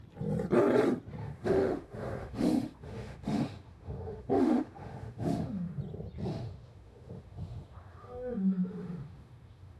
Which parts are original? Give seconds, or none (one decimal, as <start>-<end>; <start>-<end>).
0.0-1.2; 5.8-6.3